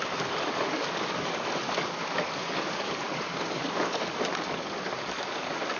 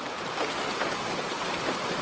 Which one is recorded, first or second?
second